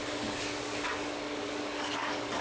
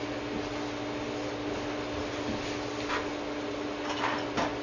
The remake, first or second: first